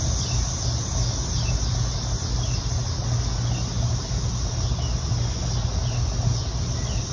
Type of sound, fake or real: real